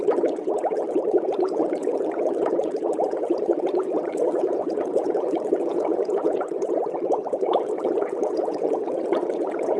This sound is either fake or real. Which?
fake